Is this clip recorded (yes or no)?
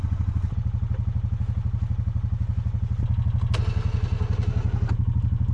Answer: yes